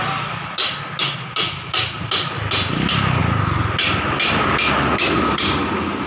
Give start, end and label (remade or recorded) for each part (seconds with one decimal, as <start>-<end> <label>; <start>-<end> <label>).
0.0-6.1 recorded